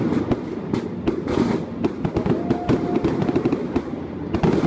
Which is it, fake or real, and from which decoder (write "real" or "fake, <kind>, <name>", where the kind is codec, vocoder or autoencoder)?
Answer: real